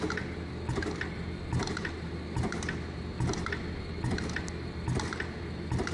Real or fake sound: real